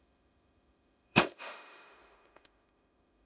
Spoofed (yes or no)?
yes